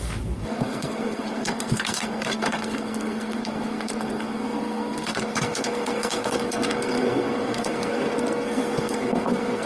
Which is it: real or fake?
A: fake